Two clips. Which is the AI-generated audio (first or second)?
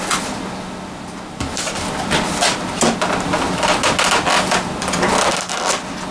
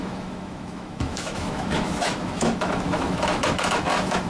second